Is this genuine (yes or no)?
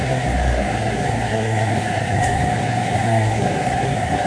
no